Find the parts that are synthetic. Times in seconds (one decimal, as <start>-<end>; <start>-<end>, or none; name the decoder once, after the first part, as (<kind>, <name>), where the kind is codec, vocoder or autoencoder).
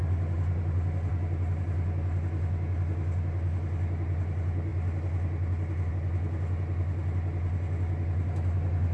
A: none